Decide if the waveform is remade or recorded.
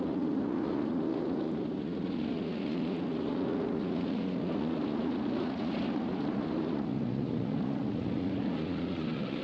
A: remade